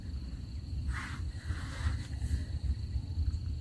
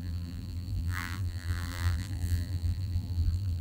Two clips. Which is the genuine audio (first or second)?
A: first